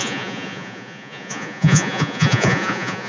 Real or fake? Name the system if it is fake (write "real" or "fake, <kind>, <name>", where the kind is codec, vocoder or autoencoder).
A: fake, vocoder, Vocos